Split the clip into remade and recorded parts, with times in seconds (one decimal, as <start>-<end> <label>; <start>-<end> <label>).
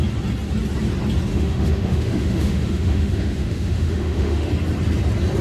0.0-1.3 recorded; 1.3-4.5 remade; 4.5-5.4 recorded